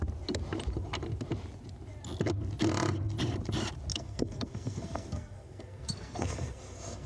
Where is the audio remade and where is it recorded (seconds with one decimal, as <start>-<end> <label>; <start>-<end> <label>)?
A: 0.0-3.9 recorded; 3.9-7.1 remade